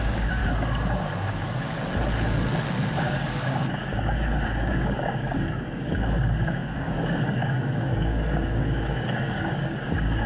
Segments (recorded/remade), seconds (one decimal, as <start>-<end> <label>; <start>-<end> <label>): 0.0-0.4 remade; 0.4-3.0 recorded; 3.0-10.3 remade